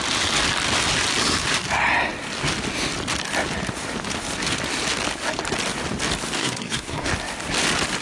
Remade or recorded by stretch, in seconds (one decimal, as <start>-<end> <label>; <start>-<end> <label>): 0.0-6.4 recorded; 6.4-7.1 remade; 7.1-8.0 recorded